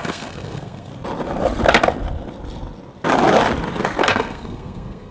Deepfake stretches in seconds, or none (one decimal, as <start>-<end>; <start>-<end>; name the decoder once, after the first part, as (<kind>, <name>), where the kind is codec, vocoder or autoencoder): 0.0-0.9 (codec, SNAC); 4.0-5.1